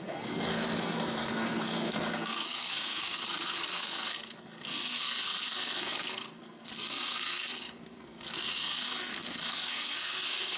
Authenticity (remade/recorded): remade